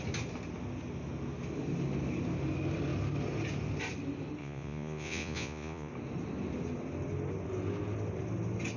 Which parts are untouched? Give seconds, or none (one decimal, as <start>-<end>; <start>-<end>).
0.0-4.4; 5.9-8.8